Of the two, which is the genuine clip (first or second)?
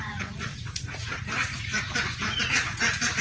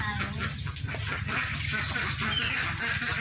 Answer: second